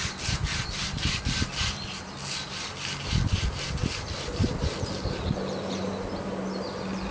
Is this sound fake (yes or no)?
no